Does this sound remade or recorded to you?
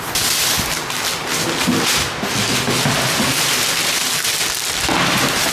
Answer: recorded